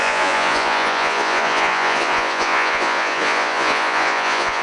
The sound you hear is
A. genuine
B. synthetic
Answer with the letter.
B